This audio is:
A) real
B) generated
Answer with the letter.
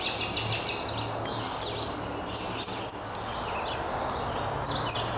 A